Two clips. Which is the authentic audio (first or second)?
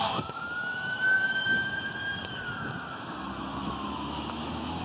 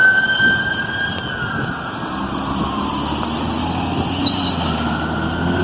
second